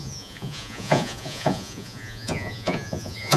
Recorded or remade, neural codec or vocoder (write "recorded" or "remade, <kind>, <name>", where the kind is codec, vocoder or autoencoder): remade, vocoder, Vocos